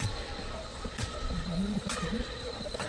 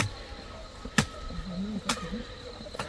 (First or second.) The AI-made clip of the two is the first